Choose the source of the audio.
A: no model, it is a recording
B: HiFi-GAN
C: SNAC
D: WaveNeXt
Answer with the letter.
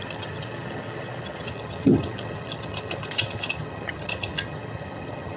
B